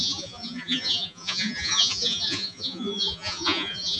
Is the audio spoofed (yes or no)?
yes